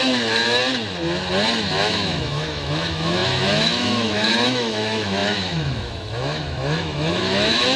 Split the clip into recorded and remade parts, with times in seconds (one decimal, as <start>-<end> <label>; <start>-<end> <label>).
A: 0.0-0.6 remade; 0.6-1.8 recorded; 1.8-7.8 remade